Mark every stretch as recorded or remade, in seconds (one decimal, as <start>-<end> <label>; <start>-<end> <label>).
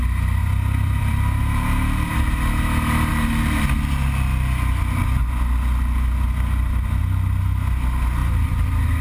0.0-0.4 recorded; 0.4-2.5 remade; 2.5-8.2 recorded; 8.2-9.0 remade